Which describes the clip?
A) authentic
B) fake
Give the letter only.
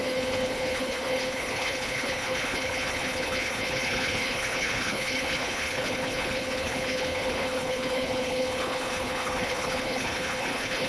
B